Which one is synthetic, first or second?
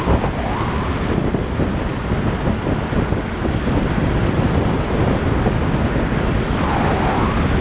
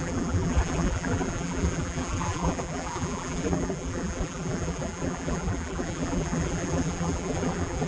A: second